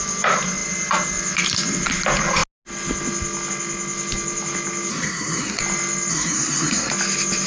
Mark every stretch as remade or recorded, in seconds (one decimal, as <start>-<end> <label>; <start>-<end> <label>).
0.0-4.9 recorded; 4.9-5.6 remade; 5.6-6.1 recorded; 6.1-6.9 remade; 6.9-7.5 recorded